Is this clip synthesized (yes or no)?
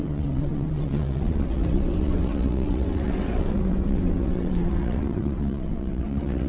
yes